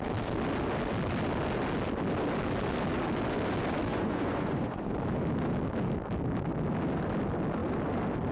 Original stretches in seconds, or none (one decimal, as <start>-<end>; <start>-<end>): 0.0-3.9; 4.9-8.3